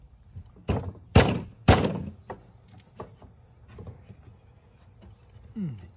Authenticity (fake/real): real